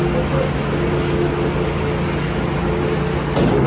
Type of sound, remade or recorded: recorded